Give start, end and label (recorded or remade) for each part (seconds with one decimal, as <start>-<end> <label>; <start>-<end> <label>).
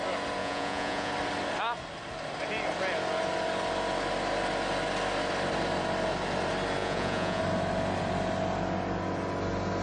0.0-0.4 recorded; 0.4-1.1 remade; 1.1-6.8 recorded; 6.8-7.4 remade; 7.4-9.8 recorded